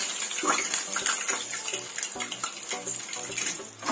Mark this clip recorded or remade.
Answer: recorded